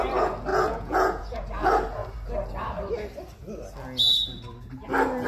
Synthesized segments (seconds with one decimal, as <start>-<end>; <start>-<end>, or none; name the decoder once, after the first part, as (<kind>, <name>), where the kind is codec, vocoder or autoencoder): 0.5-1.4 (vocoder, Vocos)